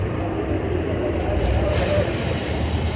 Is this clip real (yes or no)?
no